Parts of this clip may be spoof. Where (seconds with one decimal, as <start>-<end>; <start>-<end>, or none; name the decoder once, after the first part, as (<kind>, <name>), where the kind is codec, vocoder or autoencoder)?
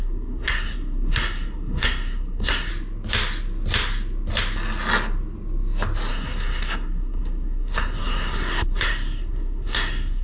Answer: 0.0-2.7 (codec, SNAC); 6.1-10.2